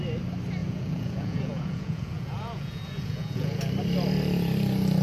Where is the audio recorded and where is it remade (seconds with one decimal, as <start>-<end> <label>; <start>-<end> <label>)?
0.0-0.6 recorded; 0.6-3.6 remade; 3.6-5.0 recorded